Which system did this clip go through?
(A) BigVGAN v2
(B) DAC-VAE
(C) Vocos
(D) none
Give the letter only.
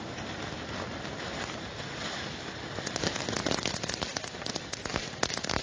D